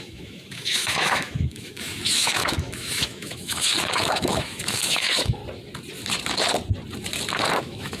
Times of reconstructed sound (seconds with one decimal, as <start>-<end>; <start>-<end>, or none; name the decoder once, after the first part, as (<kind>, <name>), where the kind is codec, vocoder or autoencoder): 0.0-5.4 (autoencoder, DAC-VAE); 7.6-8.0